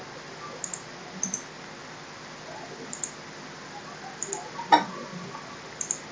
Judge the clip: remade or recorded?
recorded